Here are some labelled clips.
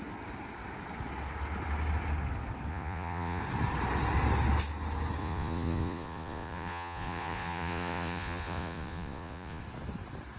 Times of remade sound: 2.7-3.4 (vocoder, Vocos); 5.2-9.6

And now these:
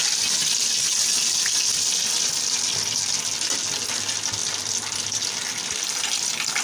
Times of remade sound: none

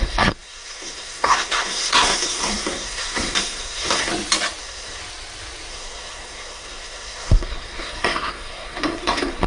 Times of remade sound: 0.0-4.1 (codec, SNAC); 4.6-5.0; 5.7-9.5

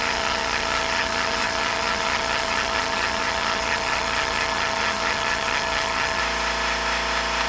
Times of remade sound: 0.0-6.2 (vocoder, HiFi-GAN)

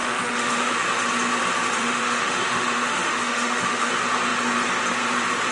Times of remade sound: 0.0-0.7 (autoencoder, DAC-VAE); 1.8-3.9

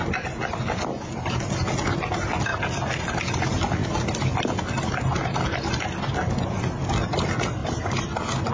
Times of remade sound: none

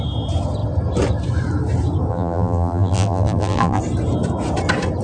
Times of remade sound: 2.1-3.8 (vocoder, BigVGAN v2)

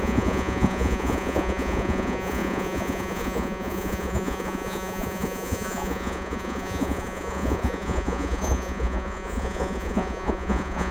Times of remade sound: 0.0-10.9 (vocoder, Vocos)